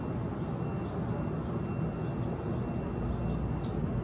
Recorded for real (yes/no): yes